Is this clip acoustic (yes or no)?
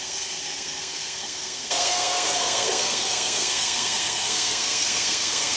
no